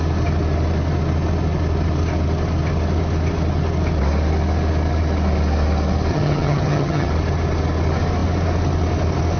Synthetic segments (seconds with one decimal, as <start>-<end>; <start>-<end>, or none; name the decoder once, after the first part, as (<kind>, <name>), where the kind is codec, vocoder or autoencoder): 6.1-7.1 (vocoder, HiFi-GAN)